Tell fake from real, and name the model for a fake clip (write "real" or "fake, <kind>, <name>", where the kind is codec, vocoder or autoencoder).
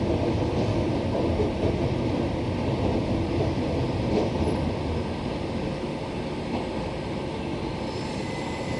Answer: real